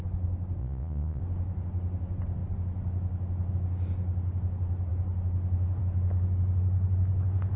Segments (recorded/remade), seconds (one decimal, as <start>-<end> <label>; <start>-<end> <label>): 0.0-0.6 recorded; 0.6-1.2 remade; 1.2-7.6 recorded